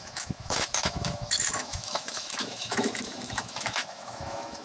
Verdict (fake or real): fake